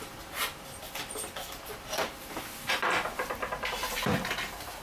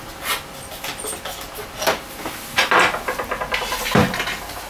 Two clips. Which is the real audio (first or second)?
second